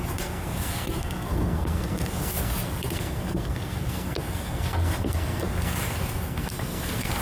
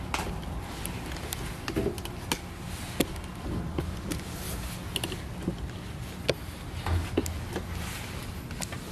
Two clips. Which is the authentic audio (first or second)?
second